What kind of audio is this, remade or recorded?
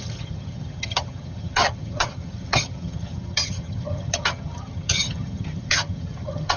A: remade